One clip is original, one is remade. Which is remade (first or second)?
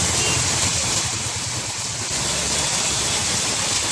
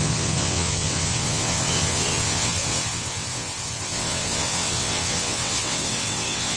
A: second